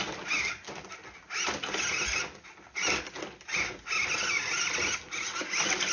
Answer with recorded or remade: recorded